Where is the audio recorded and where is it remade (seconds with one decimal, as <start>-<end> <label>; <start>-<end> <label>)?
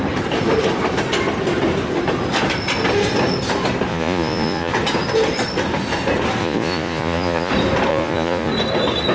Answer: 0.0-3.9 recorded; 3.9-4.7 remade; 4.7-6.4 recorded; 6.4-7.5 remade; 7.5-7.9 recorded; 7.9-8.5 remade; 8.5-9.1 recorded